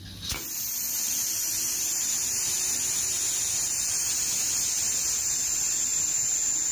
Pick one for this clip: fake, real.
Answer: real